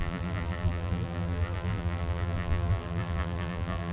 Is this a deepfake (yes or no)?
yes